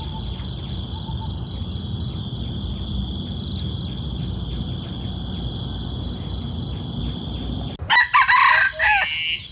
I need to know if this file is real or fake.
real